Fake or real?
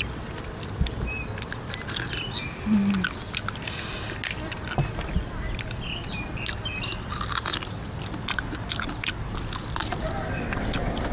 real